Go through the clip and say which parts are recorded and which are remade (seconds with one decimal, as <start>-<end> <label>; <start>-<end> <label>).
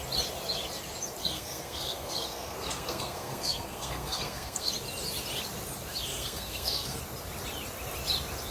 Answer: 0.0-1.2 recorded; 1.2-4.7 remade; 4.7-6.1 recorded; 6.1-7.0 remade; 7.0-8.5 recorded